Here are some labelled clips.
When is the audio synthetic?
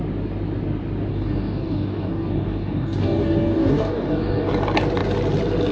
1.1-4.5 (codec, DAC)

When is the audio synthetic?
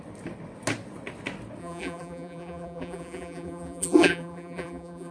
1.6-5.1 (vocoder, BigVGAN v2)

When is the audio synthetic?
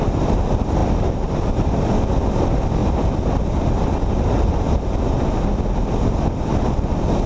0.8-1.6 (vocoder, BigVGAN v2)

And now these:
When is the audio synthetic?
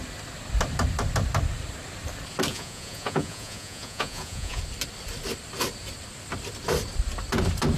2.5-4.6 (vocoder, Vocos)